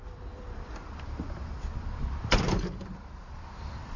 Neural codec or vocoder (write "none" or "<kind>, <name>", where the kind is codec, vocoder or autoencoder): vocoder, BigVGAN v2